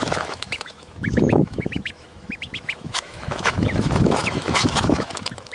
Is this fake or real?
fake